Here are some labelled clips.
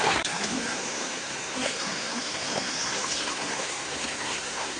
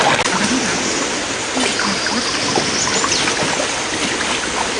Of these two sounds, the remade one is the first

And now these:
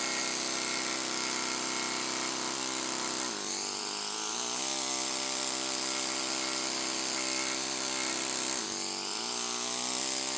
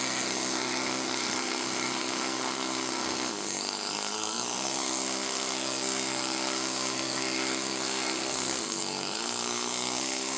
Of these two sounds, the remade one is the second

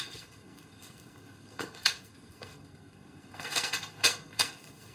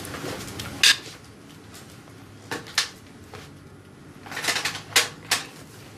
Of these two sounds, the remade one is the first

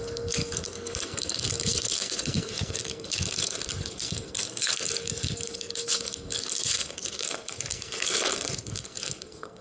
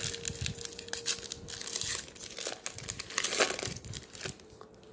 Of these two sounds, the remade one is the first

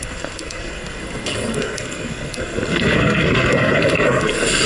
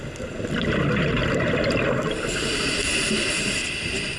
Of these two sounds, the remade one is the first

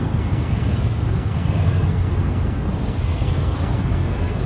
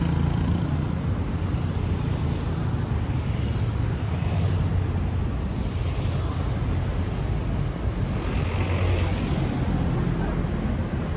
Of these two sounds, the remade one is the first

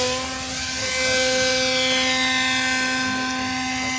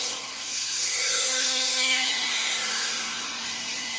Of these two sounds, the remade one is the second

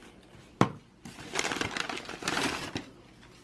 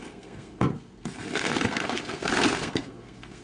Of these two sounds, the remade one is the second